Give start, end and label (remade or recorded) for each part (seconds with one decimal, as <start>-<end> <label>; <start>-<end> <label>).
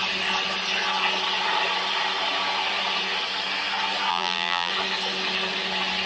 0.0-4.1 recorded; 4.1-4.7 remade; 4.7-6.1 recorded